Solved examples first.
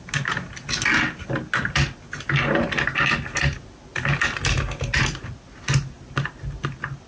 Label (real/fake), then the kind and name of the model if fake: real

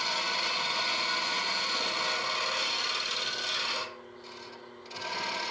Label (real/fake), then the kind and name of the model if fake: real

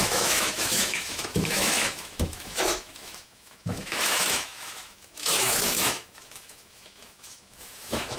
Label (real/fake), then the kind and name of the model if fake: fake, autoencoder, DAC-VAE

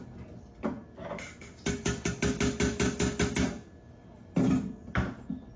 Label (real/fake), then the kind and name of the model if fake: real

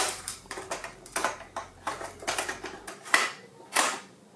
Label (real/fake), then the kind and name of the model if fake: fake, vocoder, BigVGAN v2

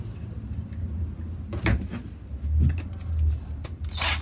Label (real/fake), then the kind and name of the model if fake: real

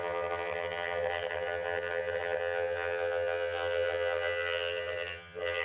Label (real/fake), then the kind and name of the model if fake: fake, vocoder, HiFi-GAN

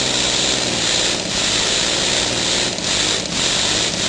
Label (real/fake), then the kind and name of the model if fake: real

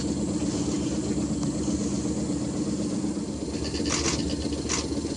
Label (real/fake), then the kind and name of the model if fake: real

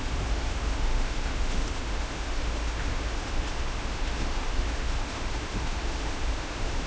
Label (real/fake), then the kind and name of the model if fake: fake, autoencoder, DAC-VAE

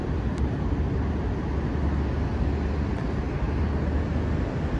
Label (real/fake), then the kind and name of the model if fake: real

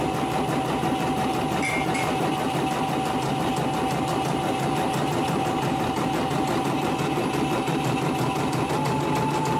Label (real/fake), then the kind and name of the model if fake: real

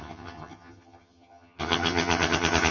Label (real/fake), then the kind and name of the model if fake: fake, vocoder, HiFi-GAN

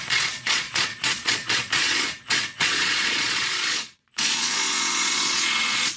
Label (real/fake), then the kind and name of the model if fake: fake, vocoder, Vocos